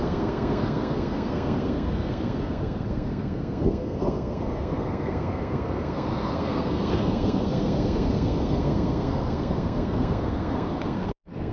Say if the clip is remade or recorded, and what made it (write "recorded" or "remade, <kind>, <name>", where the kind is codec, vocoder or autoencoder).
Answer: remade, codec, SNAC